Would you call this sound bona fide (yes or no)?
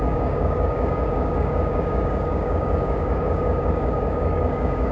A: no